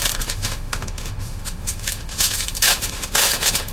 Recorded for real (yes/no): no